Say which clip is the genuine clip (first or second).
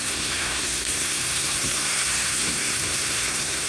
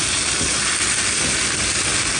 second